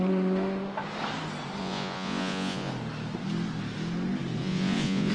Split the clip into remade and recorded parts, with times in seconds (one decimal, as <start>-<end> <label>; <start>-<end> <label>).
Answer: 0.0-1.6 recorded; 1.6-2.7 remade; 2.7-4.4 recorded; 4.4-5.1 remade